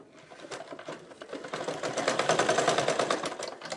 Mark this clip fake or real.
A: real